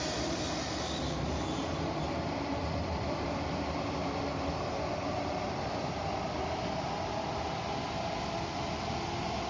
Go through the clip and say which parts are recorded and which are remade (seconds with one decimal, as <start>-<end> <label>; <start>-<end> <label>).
0.0-9.5 recorded

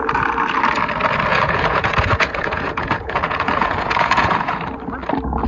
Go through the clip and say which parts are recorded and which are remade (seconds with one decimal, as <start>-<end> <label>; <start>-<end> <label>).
0.0-1.3 recorded; 1.3-4.6 remade; 4.6-5.5 recorded

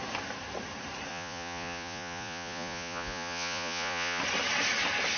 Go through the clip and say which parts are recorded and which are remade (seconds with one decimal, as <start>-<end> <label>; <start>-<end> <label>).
0.0-1.1 recorded; 1.1-4.2 remade; 4.2-5.2 recorded

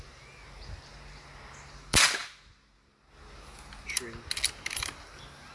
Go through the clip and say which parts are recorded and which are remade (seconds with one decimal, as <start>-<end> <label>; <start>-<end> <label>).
0.0-5.5 recorded

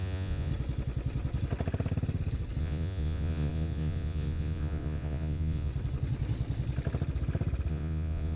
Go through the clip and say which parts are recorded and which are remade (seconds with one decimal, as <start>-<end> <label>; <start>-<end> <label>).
0.0-0.5 remade; 0.5-2.6 recorded; 2.6-5.7 remade; 5.7-7.7 recorded; 7.7-8.4 remade